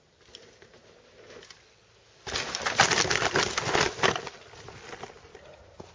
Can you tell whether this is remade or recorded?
recorded